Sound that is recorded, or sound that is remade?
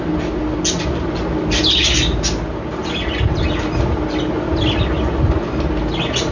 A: recorded